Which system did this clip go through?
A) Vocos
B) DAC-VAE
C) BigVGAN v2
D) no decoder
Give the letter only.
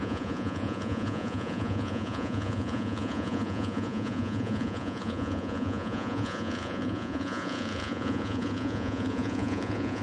A